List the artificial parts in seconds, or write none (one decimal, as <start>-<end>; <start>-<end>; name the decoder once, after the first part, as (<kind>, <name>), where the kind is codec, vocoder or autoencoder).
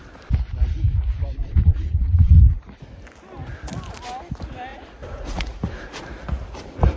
1.4-2.4 (vocoder, Vocos); 4.7-6.0